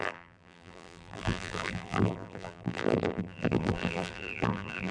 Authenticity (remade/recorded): remade